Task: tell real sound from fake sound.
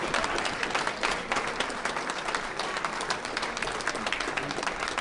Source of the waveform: real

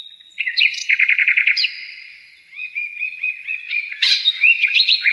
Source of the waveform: fake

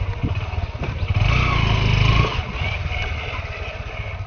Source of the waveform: real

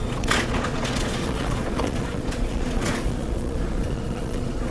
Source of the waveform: fake